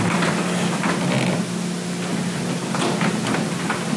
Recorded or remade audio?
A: recorded